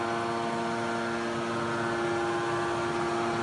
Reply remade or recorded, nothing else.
recorded